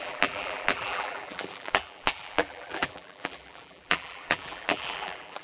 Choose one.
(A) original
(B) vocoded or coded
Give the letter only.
B